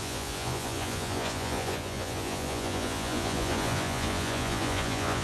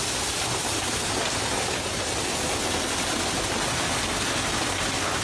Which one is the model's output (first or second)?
first